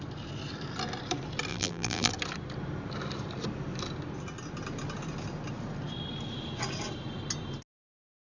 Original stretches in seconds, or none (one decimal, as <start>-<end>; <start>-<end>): 0.0-1.5; 2.1-8.3